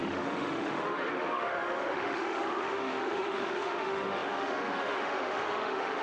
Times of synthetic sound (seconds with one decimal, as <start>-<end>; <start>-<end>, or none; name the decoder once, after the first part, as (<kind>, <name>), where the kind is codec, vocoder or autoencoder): 0.0-6.0 (autoencoder, DAC-VAE)

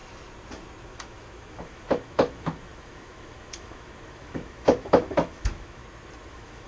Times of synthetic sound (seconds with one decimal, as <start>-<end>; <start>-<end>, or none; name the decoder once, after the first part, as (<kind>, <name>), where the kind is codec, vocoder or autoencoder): 0.9-5.8 (autoencoder, DAC-VAE); 6.3-6.7

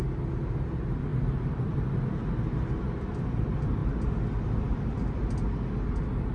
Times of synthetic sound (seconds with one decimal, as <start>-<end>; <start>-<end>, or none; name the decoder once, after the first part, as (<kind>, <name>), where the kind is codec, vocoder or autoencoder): none

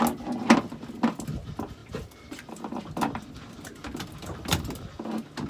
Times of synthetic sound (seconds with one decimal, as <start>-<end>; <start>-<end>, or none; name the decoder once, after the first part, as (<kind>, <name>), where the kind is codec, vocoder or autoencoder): none